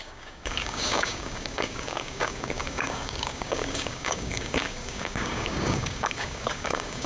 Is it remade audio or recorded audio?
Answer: remade